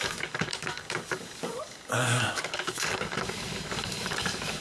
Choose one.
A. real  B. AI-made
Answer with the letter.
B